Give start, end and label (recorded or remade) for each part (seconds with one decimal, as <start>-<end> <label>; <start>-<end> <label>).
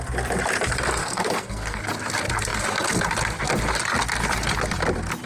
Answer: 0.0-1.0 recorded; 1.0-1.8 remade; 1.8-5.3 recorded